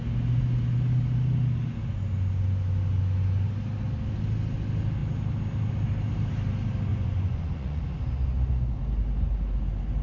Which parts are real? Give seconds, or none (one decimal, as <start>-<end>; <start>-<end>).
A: 0.0-6.9; 7.8-10.0